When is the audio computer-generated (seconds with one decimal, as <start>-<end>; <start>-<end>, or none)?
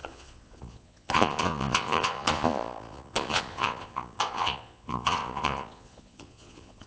0.0-6.9